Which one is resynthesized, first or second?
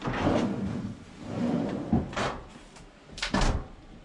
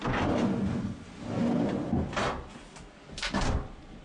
first